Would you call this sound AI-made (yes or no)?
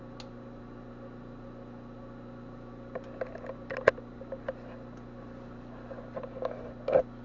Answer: no